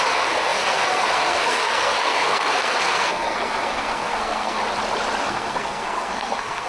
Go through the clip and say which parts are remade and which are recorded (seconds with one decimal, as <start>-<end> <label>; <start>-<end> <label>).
0.0-4.6 remade; 4.6-5.2 recorded; 5.2-6.7 remade